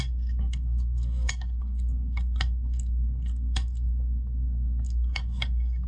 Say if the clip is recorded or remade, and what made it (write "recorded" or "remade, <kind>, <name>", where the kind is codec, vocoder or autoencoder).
remade, codec, SNAC